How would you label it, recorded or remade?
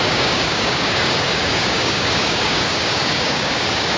remade